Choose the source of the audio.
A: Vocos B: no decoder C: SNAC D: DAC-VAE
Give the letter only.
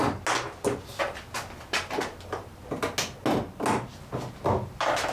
B